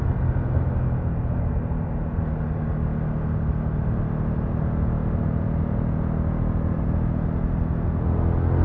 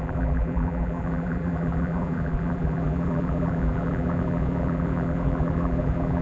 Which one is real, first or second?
first